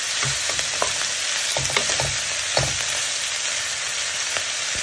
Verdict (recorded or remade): recorded